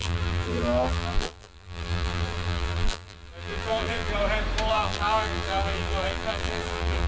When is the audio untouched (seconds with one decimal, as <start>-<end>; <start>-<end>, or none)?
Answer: 4.1-4.7

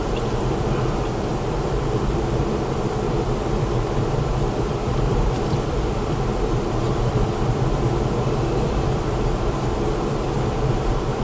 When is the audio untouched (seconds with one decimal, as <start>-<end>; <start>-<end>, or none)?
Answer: none

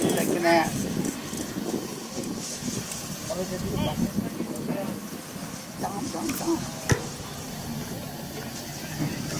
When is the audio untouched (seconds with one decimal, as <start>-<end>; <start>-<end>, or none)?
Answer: 0.0-0.7; 1.9-9.4

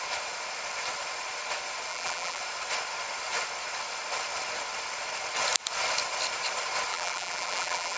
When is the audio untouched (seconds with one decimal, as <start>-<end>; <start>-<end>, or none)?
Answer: 0.0-1.9; 2.4-6.9